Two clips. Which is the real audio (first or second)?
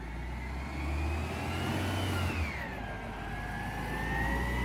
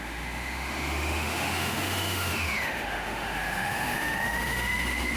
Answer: first